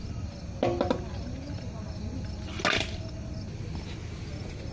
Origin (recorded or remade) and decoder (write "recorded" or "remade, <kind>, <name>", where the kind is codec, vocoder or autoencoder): recorded